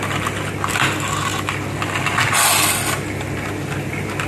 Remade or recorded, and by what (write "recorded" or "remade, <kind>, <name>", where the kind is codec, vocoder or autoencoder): recorded